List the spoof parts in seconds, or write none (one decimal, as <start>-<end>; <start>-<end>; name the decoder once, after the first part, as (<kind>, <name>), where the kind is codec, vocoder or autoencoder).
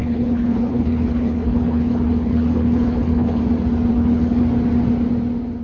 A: 0.0-3.4 (codec, HILCodec); 3.9-4.4